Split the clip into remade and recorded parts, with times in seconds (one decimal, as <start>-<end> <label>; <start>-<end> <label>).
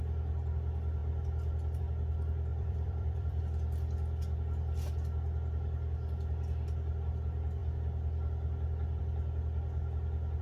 0.0-2.5 recorded; 2.5-3.4 remade; 3.4-10.4 recorded